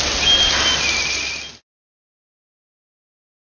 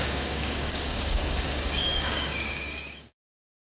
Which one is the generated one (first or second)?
second